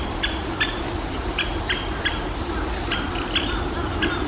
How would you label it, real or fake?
real